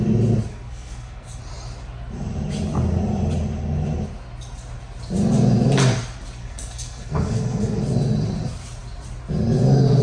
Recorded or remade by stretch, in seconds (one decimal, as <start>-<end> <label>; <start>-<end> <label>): 0.0-0.5 recorded; 0.5-1.4 remade; 1.4-6.4 recorded; 6.4-7.8 remade; 7.8-10.0 recorded